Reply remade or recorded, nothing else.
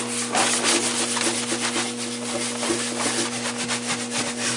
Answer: recorded